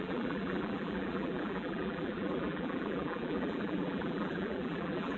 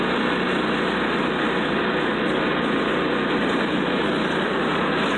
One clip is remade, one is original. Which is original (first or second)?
second